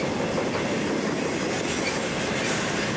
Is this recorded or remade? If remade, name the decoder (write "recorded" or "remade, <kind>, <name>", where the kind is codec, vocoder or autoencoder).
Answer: recorded